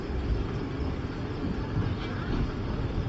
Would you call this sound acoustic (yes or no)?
yes